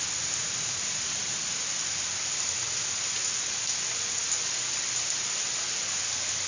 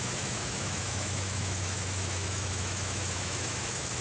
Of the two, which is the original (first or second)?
first